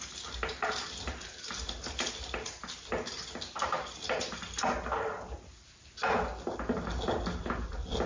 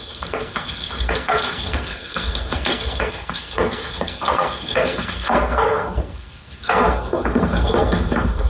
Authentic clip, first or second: first